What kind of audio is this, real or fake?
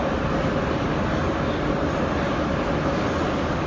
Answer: real